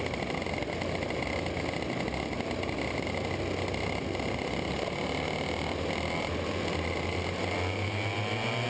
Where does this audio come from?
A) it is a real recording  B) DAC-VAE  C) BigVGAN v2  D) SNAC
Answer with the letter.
A